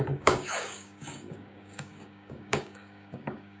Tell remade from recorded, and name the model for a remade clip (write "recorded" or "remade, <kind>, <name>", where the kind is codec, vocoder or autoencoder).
remade, codec, DAC